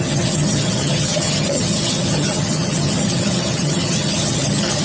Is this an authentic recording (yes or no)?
no